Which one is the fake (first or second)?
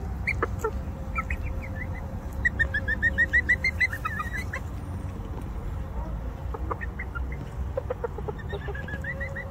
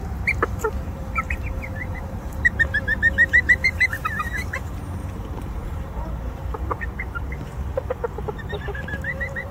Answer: second